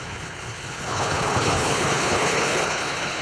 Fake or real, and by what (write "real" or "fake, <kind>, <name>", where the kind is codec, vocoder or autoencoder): fake, codec, HILCodec